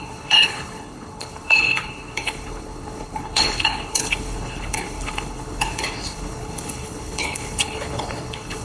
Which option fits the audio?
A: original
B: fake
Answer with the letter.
B